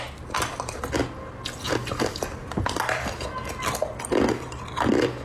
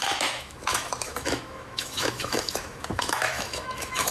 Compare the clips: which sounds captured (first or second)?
first